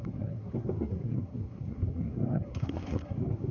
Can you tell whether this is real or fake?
fake